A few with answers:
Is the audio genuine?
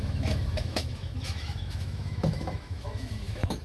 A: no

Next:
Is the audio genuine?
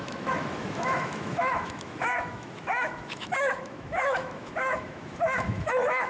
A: no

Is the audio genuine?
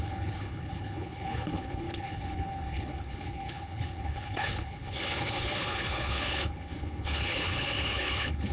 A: no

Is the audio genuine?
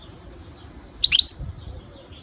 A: yes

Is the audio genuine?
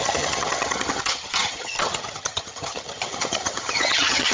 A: no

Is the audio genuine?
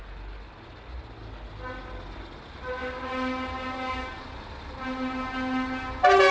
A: yes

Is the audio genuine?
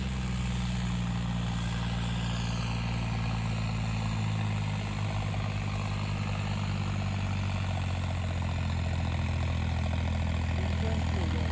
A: yes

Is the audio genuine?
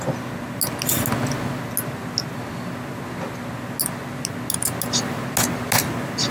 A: yes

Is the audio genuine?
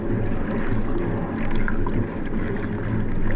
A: yes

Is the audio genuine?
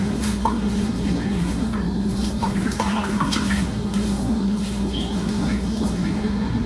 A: no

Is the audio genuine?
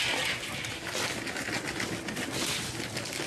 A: yes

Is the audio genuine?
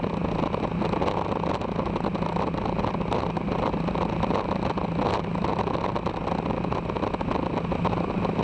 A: yes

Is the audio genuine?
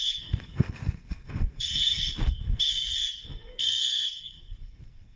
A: no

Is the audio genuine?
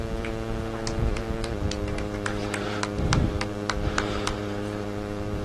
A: no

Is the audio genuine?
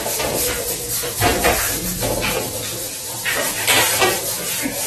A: yes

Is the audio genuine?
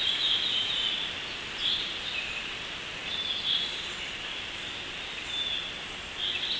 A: yes